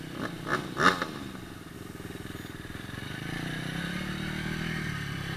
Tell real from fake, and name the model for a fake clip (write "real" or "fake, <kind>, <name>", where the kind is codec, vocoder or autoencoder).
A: real